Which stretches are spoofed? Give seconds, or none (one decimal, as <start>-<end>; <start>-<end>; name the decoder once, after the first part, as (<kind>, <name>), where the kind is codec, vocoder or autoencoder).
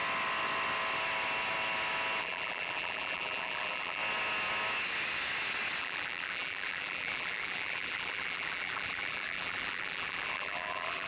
2.2-4.0 (vocoder, BigVGAN v2); 5.8-11.1